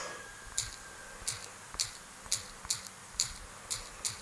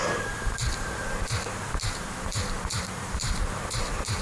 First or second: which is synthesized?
second